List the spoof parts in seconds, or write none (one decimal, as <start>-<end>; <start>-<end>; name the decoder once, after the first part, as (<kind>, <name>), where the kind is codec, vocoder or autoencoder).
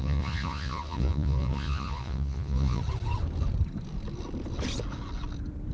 0.0-2.8 (vocoder, Vocos)